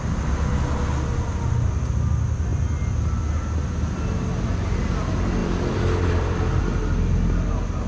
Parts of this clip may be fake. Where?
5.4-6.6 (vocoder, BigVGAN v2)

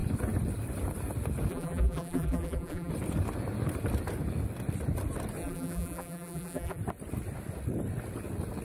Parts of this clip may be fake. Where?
1.5-2.9 (vocoder, BigVGAN v2); 5.4-6.8

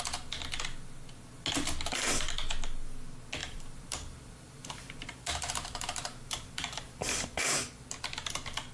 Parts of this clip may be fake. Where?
3.4-7.9 (vocoder, BigVGAN v2)